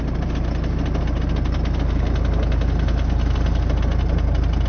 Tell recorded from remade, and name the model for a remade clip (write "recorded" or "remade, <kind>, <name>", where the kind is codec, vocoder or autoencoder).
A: recorded